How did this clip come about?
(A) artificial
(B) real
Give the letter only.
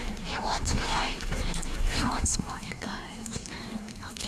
A